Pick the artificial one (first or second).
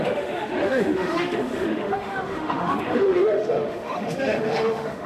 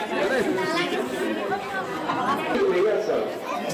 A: first